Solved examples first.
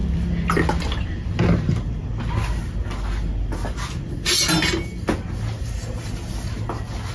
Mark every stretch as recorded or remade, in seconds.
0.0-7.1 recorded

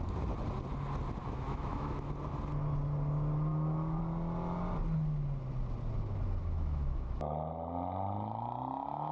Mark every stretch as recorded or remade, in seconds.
0.0-1.2 recorded; 1.2-2.1 remade; 2.1-3.5 recorded; 3.5-4.0 remade; 4.0-6.4 recorded; 6.4-7.1 remade; 7.1-9.1 recorded

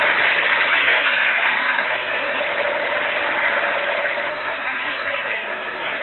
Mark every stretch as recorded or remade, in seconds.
0.0-0.7 recorded; 0.7-2.4 remade; 2.4-4.3 recorded; 4.3-6.0 remade

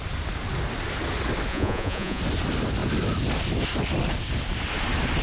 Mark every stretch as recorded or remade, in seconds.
0.0-1.5 recorded; 1.5-2.2 remade; 2.2-5.2 recorded

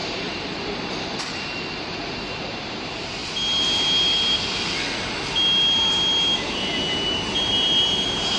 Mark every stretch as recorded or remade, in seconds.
0.0-3.2 remade; 3.2-7.1 recorded; 7.1-8.4 remade

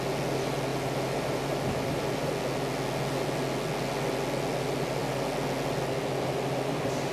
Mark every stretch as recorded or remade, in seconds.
0.0-0.7 recorded; 0.7-2.3 remade; 2.3-7.1 recorded